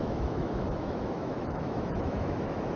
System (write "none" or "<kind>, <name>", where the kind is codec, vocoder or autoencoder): autoencoder, DAC-VAE